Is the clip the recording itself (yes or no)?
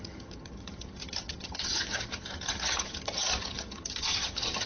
no